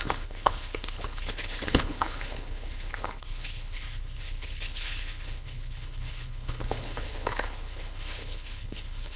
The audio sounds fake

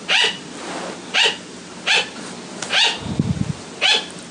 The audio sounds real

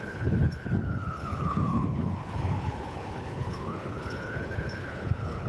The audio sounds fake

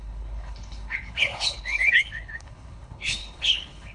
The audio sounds fake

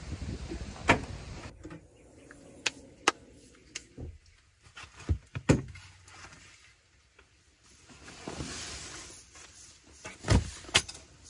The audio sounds real